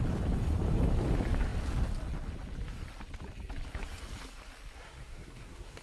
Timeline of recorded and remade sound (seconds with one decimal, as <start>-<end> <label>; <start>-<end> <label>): 0.0-4.8 recorded; 4.8-5.8 remade